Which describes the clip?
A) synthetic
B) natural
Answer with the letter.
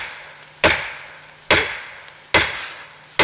B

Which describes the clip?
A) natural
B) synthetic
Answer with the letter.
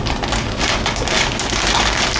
A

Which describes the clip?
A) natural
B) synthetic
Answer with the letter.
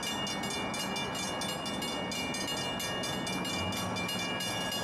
A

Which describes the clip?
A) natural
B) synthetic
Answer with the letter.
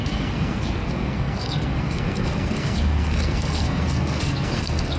B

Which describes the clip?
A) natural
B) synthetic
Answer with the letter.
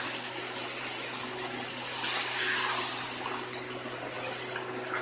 A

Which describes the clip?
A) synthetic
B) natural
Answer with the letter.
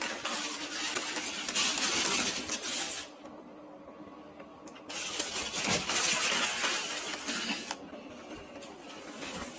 B